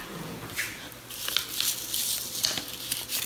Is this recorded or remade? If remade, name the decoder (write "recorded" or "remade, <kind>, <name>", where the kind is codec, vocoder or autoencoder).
recorded